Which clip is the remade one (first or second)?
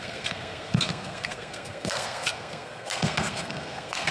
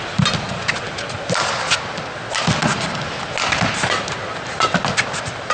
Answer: first